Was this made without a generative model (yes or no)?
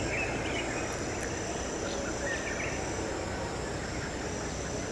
yes